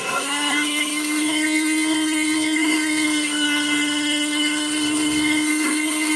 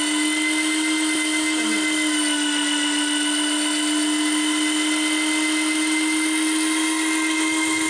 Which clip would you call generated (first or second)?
first